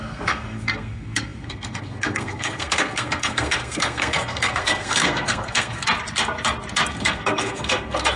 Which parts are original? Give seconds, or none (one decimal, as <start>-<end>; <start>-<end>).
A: 5.8-6.9